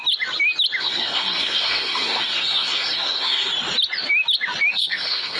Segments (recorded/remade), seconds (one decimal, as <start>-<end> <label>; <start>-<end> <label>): 0.0-0.8 recorded; 0.8-3.5 remade; 3.5-4.7 recorded; 4.7-5.4 remade